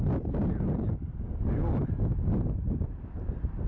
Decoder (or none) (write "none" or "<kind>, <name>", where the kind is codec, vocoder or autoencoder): none